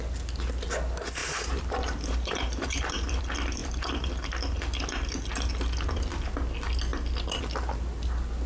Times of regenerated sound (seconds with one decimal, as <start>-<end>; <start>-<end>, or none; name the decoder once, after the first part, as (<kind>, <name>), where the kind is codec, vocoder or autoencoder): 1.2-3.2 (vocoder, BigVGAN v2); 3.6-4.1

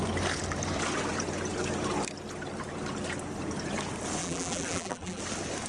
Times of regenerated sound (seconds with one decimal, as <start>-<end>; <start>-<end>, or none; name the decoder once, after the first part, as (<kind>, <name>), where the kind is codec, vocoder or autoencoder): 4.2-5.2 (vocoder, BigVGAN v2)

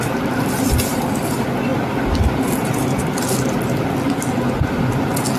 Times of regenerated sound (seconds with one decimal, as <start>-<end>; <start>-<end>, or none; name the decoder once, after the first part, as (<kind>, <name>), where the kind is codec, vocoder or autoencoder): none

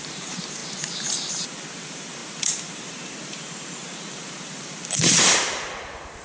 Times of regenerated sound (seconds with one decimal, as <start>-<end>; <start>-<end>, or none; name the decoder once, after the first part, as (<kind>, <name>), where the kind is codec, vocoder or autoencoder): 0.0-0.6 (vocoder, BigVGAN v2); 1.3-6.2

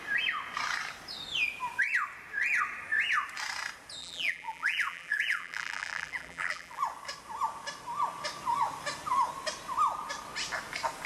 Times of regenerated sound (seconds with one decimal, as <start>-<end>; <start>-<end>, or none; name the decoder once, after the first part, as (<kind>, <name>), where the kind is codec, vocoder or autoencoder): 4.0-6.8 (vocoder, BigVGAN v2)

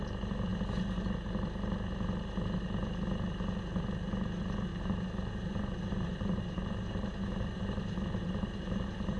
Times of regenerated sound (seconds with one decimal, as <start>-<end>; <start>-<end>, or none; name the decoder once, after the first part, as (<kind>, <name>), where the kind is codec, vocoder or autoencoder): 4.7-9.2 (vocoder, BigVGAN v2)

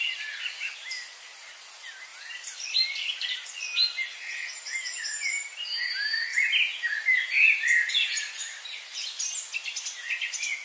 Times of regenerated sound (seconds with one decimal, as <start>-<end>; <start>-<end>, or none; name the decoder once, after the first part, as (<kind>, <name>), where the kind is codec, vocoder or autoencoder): 2.1-3.5 (vocoder, BigVGAN v2)